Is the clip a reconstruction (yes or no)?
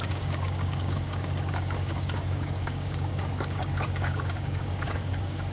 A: yes